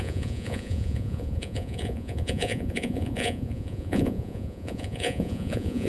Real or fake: fake